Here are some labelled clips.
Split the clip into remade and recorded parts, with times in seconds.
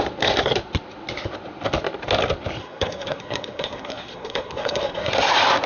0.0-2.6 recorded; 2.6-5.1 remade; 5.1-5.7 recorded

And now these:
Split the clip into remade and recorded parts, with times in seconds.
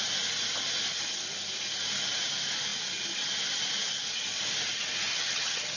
0.0-5.1 recorded; 5.1-5.8 remade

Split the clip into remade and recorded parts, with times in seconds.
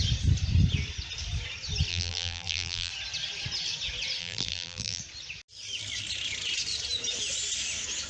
0.0-1.9 recorded; 1.9-2.9 remade; 2.9-4.2 recorded; 4.2-5.0 remade; 5.0-8.1 recorded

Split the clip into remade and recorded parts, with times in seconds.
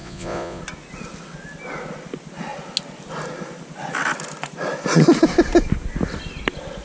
0.0-0.6 remade; 0.6-6.8 recorded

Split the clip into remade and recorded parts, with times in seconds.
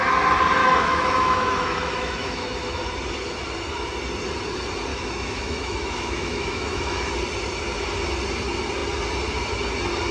0.0-0.6 recorded; 0.6-2.8 remade; 2.8-4.9 recorded; 4.9-7.1 remade; 7.1-10.1 recorded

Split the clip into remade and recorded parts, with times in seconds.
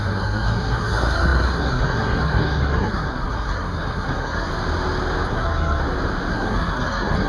0.0-4.5 remade; 4.5-5.3 recorded; 5.3-5.8 remade; 5.8-6.3 recorded; 6.3-7.3 remade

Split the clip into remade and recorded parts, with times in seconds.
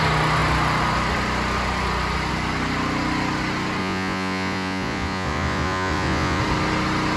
0.0-3.8 recorded; 3.8-6.4 remade; 6.4-7.2 recorded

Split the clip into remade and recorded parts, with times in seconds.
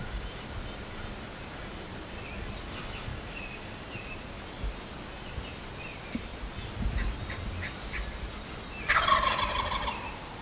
0.0-3.1 recorded; 3.1-3.9 remade; 3.9-10.4 recorded